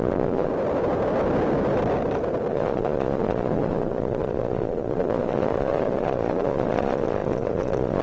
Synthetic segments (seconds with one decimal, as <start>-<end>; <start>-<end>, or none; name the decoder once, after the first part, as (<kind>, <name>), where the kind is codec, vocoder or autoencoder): 0.0-0.5 (vocoder, Vocos); 2.5-8.0